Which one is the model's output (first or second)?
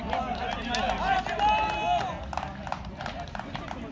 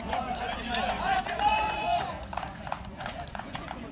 second